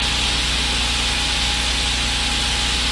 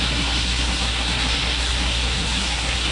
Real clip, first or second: first